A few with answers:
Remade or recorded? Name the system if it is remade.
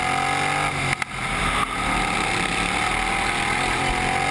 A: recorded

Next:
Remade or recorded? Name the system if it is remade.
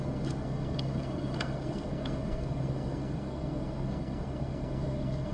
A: remade, codec, SNAC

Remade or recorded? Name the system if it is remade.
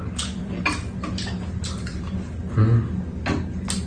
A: recorded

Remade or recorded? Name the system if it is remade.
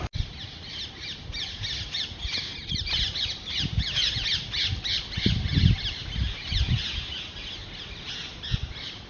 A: recorded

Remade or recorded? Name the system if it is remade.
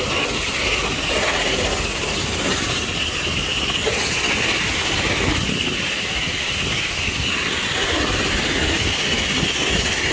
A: recorded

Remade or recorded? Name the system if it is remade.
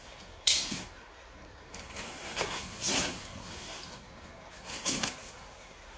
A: remade, codec, SNAC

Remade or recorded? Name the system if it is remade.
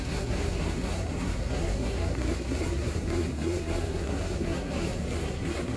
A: remade, codec, SNAC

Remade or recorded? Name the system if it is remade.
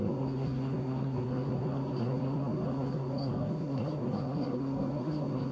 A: remade, codec, SNAC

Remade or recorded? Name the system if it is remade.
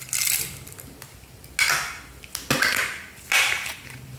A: recorded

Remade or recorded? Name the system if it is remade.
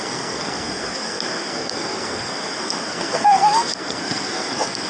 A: remade, codec, SNAC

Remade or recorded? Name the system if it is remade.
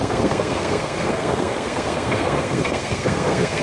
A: remade, codec, SNAC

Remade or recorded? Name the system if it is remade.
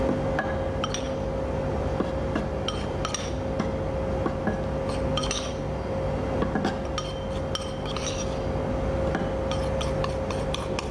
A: recorded